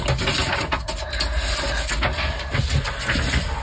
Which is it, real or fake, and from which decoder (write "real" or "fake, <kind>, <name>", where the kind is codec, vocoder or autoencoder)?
real